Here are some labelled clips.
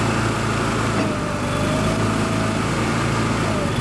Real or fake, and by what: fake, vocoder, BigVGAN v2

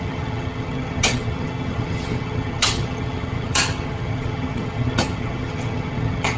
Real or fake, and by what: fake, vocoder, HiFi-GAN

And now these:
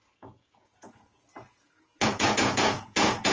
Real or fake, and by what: fake, vocoder, Vocos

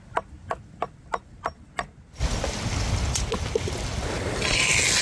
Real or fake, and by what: real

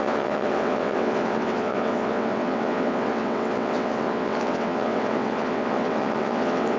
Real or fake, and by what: fake, vocoder, WaveNeXt